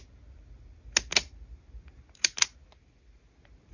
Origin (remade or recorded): recorded